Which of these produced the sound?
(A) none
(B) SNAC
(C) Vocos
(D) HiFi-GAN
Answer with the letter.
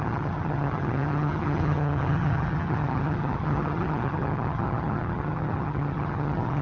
D